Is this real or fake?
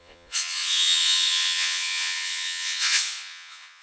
fake